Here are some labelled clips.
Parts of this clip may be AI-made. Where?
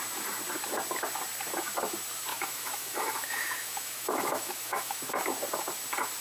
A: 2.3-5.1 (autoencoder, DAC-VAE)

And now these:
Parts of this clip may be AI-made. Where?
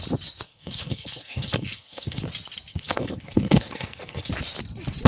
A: 0.5-2.2 (codec, SNAC); 2.7-4.3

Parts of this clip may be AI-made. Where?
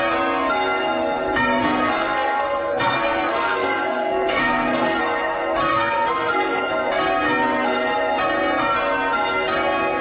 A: 1.6-5.0 (codec, SNAC); 5.7-6.7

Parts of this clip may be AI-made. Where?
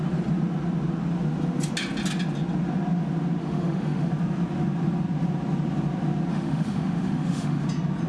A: 3.4-4.1 (autoencoder, DAC-VAE); 6.3-7.6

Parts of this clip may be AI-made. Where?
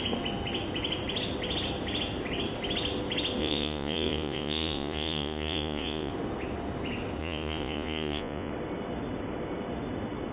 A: 3.4-6.1 (vocoder, Vocos); 7.2-8.5